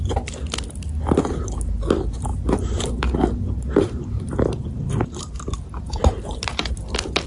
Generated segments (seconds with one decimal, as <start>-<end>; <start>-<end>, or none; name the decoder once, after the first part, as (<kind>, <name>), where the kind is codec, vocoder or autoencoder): 2.3-6.7 (vocoder, BigVGAN v2)